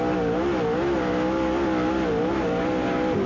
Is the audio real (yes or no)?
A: yes